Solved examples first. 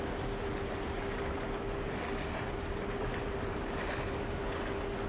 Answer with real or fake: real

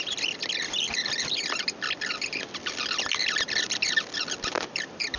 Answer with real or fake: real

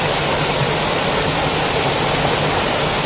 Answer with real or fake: real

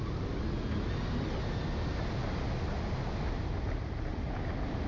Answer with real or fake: real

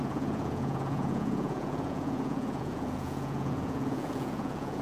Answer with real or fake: fake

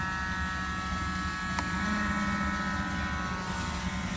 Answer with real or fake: real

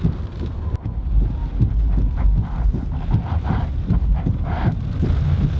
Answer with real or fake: real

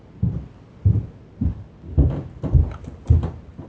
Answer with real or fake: real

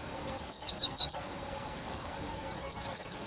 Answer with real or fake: fake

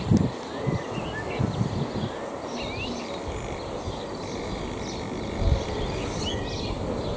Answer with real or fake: real